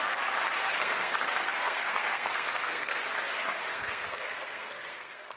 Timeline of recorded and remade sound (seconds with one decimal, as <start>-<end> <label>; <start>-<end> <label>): 0.0-0.7 recorded; 0.7-3.0 remade; 3.0-3.7 recorded; 3.7-5.4 remade